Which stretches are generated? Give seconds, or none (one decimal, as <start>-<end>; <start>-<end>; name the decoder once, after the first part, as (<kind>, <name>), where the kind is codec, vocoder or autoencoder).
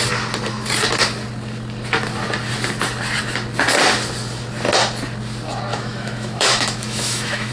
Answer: 5.7-7.5 (autoencoder, DAC-VAE)